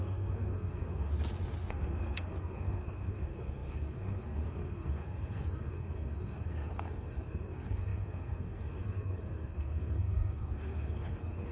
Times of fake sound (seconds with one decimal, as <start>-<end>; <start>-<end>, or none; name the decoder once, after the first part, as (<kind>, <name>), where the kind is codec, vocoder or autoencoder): 0.0-1.1 (codec, SNAC); 1.7-11.5